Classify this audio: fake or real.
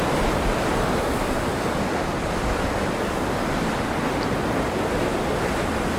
real